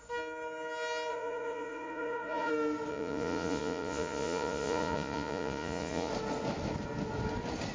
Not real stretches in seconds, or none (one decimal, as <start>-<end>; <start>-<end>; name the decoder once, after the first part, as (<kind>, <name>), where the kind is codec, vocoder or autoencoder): 1.1-2.5 (vocoder, Vocos); 2.9-6.1